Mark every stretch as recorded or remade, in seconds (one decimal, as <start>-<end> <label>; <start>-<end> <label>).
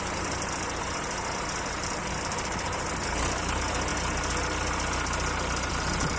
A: 0.0-6.2 recorded